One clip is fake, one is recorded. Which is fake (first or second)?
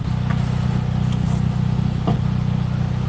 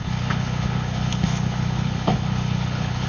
second